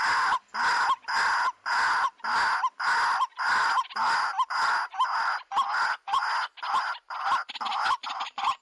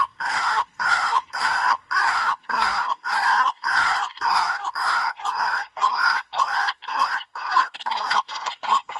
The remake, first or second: second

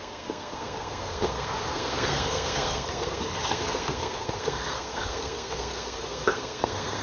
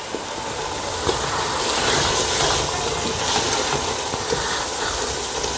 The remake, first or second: first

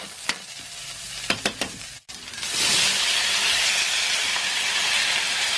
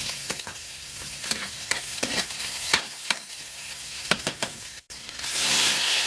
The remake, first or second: second